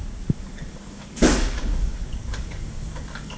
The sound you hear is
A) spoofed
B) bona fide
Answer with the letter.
A